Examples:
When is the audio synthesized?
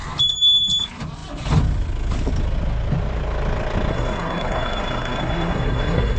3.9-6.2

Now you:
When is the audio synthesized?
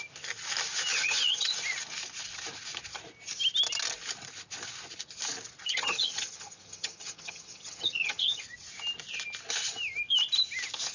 0.9-1.5; 5.7-8.4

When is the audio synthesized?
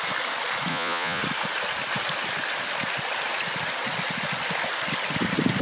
0.7-1.2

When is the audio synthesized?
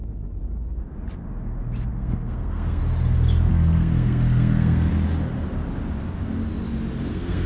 1.9-2.8; 3.5-4.9; 7.1-7.5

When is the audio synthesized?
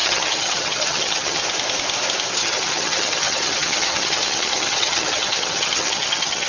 0.0-1.4; 2.4-6.5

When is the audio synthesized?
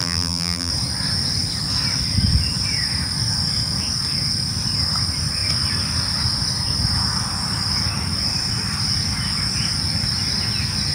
0.0-0.7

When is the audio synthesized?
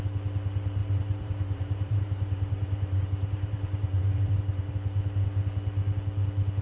0.8-4.7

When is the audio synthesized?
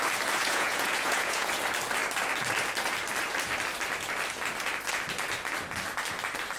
0.4-1.5